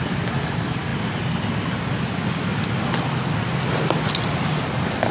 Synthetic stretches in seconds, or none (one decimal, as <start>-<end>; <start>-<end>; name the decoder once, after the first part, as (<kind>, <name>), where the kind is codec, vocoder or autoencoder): none